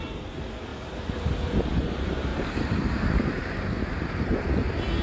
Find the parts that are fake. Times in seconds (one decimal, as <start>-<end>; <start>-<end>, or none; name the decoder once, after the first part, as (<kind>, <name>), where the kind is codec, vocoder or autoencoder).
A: 2.3-2.9 (vocoder, BigVGAN v2); 3.4-4.3